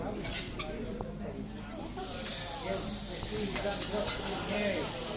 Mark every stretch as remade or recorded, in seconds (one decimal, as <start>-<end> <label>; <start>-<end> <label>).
0.0-5.2 recorded